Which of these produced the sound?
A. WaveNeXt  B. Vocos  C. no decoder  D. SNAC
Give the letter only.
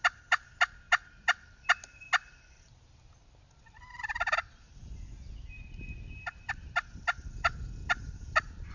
C